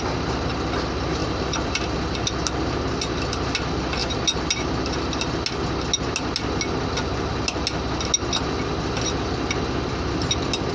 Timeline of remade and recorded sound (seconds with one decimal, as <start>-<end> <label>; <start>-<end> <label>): 0.0-1.2 recorded; 1.2-1.8 remade; 1.8-10.7 recorded